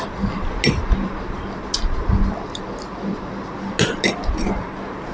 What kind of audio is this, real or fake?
real